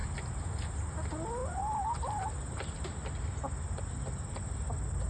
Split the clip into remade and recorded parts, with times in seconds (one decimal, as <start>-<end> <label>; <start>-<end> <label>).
0.0-0.5 remade; 0.5-5.1 recorded